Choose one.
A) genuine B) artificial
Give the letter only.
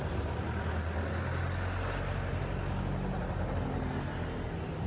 A